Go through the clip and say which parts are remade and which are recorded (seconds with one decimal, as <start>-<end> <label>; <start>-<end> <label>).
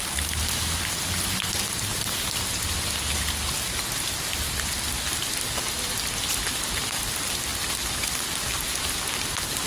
0.0-9.7 recorded